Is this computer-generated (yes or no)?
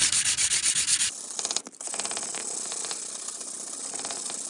no